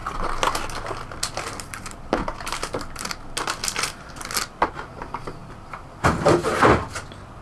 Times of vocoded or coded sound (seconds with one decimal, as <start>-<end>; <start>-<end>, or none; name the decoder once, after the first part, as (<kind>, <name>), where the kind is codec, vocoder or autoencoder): none